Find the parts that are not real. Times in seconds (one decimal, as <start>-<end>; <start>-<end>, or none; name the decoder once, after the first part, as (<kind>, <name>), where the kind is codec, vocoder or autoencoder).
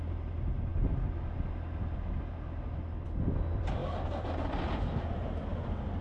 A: none